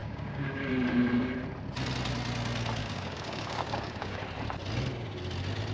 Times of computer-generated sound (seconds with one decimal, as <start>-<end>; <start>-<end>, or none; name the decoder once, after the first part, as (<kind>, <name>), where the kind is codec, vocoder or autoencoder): 0.0-0.7 (codec, DAC); 2.8-4.2